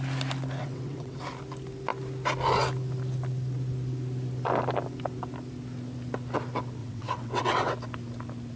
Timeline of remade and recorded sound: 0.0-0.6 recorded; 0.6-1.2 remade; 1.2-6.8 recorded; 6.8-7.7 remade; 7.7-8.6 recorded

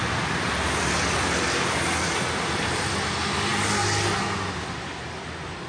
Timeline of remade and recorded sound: 0.0-5.7 recorded

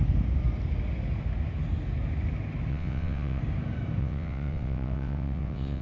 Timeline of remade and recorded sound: 0.0-2.7 recorded; 2.7-3.4 remade; 3.4-4.0 recorded; 4.0-5.8 remade

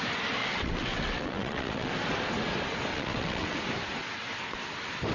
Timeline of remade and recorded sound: 0.0-0.4 recorded; 0.4-1.9 remade; 1.9-2.9 recorded; 2.9-3.6 remade; 3.6-5.1 recorded

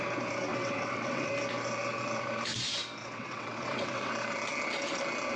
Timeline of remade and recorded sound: 0.0-0.5 recorded; 0.5-1.3 remade; 1.3-3.0 recorded; 3.0-4.1 remade; 4.1-5.4 recorded

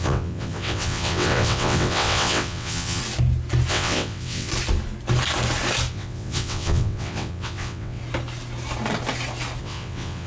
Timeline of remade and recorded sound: 0.0-3.0 remade; 3.0-3.7 recorded; 3.7-4.5 remade; 4.5-5.9 recorded; 5.9-8.0 remade; 8.0-9.6 recorded; 9.6-10.3 remade

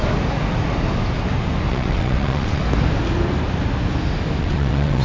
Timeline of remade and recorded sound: 0.0-1.7 recorded; 1.7-2.6 remade; 2.6-4.4 recorded; 4.4-5.0 remade